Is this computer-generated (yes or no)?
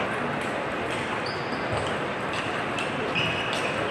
no